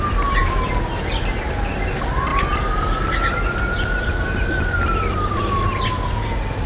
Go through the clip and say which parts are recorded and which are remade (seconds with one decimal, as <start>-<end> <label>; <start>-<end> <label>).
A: 0.0-6.7 recorded